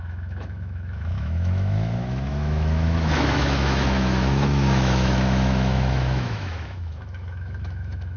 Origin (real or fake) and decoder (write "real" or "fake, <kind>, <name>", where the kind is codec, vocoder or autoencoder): fake, autoencoder, DAC-VAE